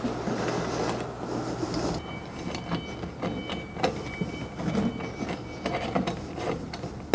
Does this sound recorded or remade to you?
recorded